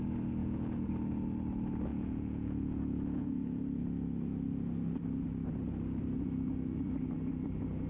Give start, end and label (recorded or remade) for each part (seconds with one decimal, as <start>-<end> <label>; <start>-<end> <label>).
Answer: 0.0-0.4 recorded; 0.4-0.9 remade; 0.9-1.9 recorded; 1.9-3.6 remade; 3.6-7.9 recorded